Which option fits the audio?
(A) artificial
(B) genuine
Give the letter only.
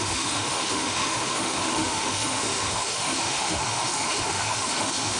A